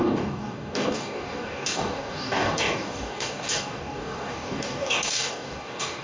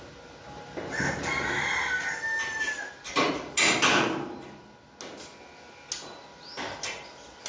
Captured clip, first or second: second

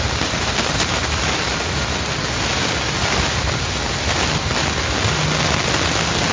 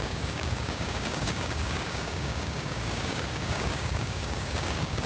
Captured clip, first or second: first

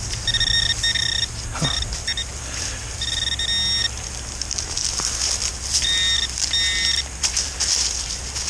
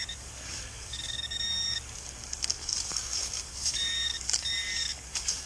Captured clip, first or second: first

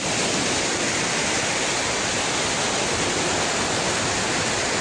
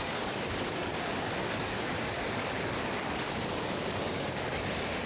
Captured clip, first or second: first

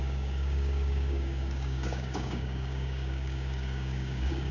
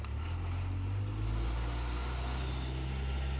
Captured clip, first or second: second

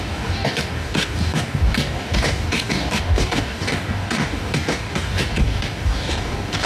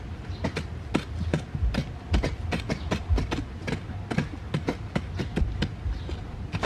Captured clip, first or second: second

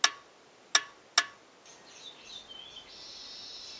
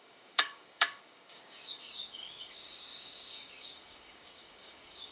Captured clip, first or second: first